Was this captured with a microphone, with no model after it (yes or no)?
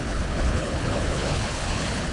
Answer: no